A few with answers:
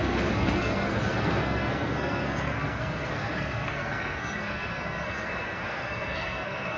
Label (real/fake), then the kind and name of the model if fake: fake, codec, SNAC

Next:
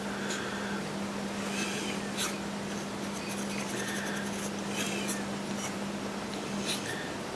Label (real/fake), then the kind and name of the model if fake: real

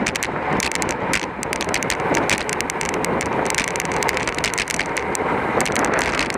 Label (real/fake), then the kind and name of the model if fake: real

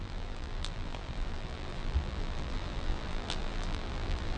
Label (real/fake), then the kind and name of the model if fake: fake, vocoder, BigVGAN v2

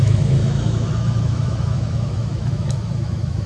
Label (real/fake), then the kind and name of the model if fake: fake, autoencoder, DAC-VAE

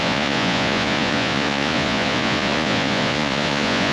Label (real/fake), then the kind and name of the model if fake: fake, vocoder, Vocos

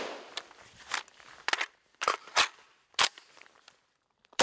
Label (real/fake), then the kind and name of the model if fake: fake, vocoder, BigVGAN v2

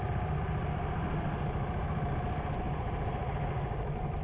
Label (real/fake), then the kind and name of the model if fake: real